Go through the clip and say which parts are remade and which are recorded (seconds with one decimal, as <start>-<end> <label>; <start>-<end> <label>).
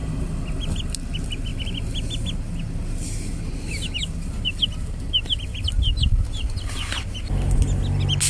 0.0-8.3 recorded